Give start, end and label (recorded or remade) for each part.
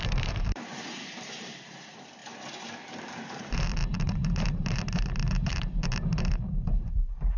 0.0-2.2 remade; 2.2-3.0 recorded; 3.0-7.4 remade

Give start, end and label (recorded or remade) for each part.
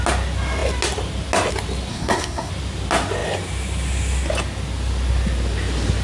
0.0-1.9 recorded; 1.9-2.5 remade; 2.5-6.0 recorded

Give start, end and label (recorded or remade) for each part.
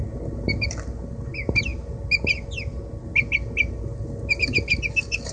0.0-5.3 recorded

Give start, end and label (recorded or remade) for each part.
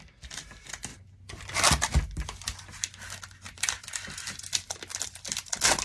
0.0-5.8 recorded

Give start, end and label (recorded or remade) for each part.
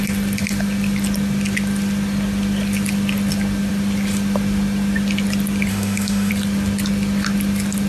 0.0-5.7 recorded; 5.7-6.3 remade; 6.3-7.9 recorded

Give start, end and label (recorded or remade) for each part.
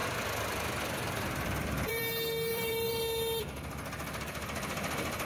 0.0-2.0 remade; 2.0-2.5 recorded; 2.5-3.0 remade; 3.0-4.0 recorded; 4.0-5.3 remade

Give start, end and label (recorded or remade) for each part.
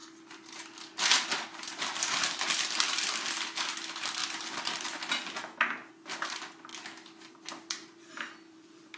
0.0-1.8 recorded; 1.8-4.2 remade; 4.2-5.9 recorded; 5.9-6.7 remade; 6.7-7.3 recorded; 7.3-9.0 remade